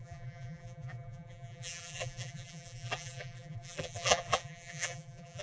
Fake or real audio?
fake